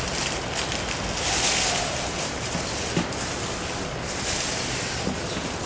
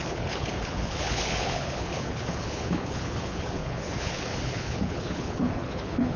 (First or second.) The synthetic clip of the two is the second